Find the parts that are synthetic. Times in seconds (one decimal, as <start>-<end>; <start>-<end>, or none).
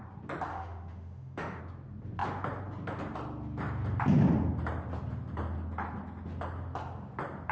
0.5-1.6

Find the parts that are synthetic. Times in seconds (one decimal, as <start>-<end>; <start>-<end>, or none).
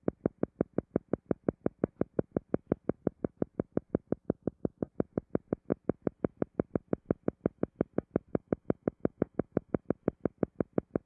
8.3-9.8